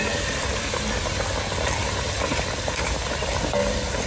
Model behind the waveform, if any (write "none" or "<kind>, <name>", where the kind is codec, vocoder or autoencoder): none